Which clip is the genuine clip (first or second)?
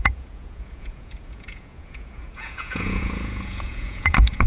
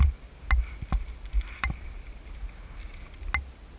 second